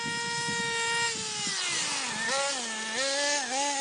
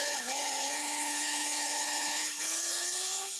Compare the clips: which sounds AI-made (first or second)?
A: second